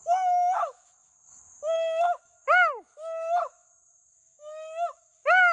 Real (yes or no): no